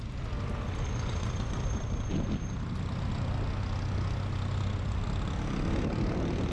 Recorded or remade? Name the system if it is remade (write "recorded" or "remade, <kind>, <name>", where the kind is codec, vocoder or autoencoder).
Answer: recorded